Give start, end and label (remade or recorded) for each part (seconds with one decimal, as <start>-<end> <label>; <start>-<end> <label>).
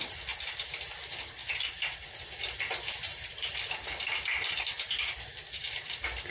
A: 0.0-3.1 recorded; 3.1-3.6 remade; 3.6-6.3 recorded